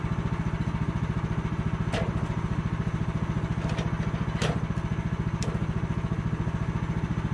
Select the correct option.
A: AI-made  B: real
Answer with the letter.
B